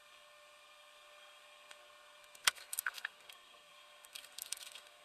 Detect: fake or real fake